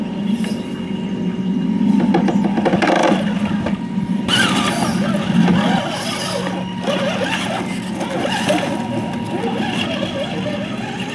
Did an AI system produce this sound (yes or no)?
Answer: no